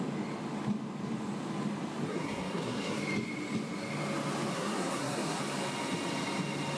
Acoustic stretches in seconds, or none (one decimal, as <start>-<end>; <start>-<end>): 0.0-2.1; 3.0-4.5; 5.4-6.8